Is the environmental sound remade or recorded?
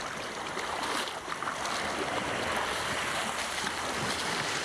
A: recorded